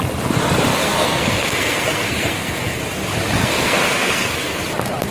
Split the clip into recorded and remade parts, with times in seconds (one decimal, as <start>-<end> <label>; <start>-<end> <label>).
0.0-0.7 recorded; 0.7-2.8 remade; 2.8-3.4 recorded; 3.4-4.6 remade; 4.6-5.1 recorded